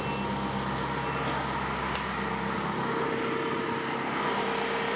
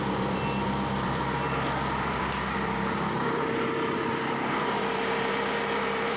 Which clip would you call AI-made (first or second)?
second